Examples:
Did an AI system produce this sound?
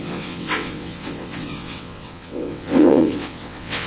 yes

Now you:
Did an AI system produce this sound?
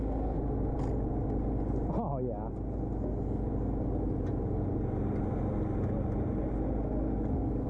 no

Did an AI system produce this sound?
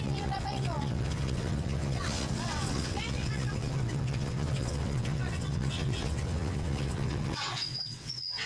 yes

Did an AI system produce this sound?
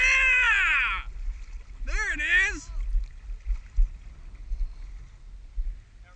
no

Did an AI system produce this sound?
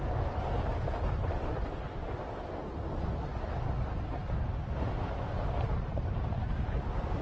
no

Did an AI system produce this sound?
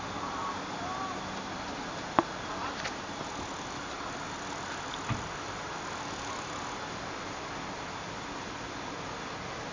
no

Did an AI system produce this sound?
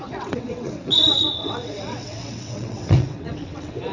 yes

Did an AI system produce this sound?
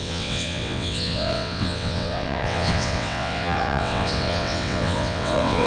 yes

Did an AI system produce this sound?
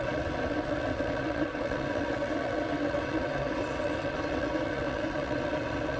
yes